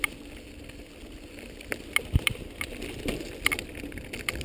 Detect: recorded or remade recorded